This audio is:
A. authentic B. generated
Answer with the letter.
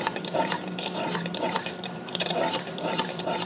B